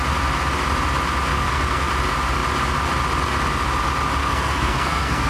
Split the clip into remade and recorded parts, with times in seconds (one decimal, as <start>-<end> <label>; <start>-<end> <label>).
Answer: 0.0-1.3 recorded; 1.3-1.9 remade; 1.9-4.2 recorded; 4.2-5.3 remade